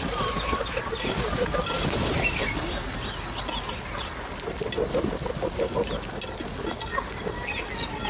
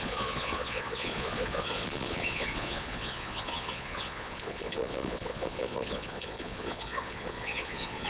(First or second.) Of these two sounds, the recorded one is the first